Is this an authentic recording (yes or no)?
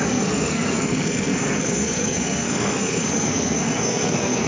no